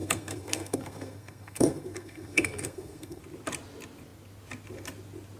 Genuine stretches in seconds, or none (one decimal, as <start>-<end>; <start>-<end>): 3.2-5.4